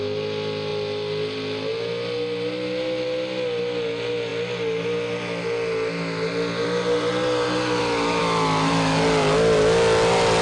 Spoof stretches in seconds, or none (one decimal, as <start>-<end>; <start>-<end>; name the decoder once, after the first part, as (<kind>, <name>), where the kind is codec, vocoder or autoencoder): none

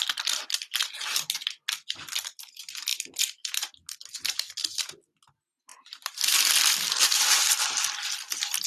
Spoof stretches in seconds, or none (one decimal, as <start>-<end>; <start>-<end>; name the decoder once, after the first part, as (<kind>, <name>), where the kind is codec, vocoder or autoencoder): 5.7-7.3 (vocoder, BigVGAN v2)

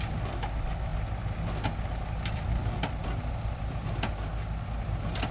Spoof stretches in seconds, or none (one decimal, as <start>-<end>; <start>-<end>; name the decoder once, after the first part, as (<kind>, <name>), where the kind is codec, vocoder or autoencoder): 0.9-4.1 (vocoder, BigVGAN v2)

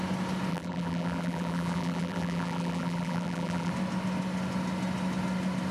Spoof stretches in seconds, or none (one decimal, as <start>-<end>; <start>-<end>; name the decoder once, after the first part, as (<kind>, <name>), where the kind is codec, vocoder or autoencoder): 0.5-3.7 (vocoder, BigVGAN v2)

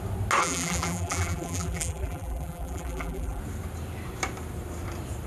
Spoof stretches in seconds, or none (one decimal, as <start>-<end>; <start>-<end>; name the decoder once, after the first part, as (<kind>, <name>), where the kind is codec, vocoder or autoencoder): 0.4-3.4 (vocoder, BigVGAN v2)